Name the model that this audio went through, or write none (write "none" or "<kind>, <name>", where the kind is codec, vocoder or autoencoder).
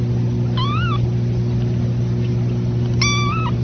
none